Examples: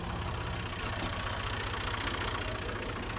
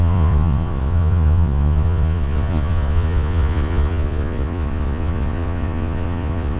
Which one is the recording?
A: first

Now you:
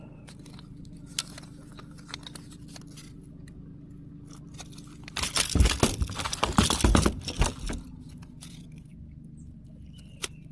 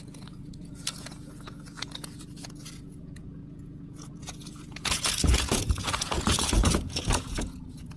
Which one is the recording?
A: first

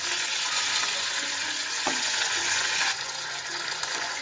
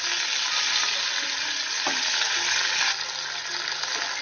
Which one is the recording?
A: second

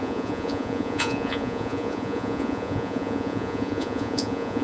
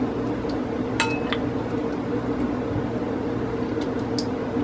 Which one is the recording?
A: second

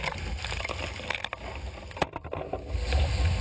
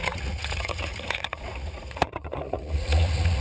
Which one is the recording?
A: first